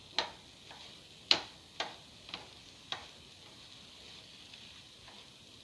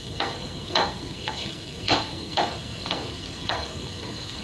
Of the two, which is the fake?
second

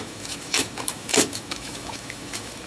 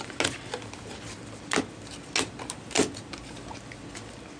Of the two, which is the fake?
first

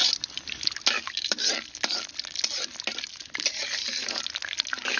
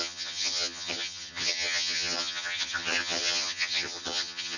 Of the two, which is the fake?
second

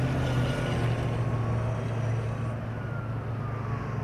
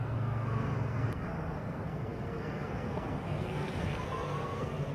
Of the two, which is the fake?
second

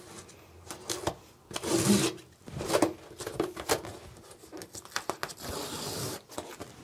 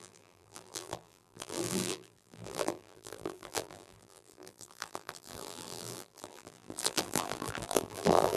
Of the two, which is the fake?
second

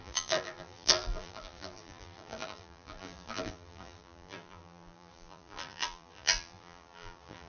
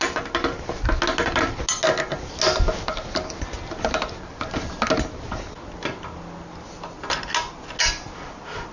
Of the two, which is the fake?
first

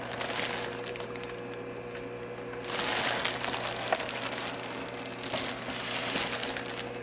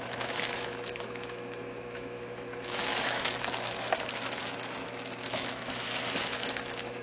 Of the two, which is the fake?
second